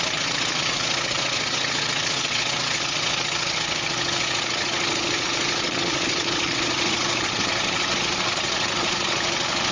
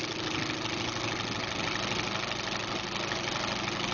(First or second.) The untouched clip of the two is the second